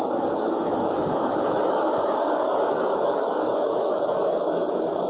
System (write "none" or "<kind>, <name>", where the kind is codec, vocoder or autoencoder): codec, DAC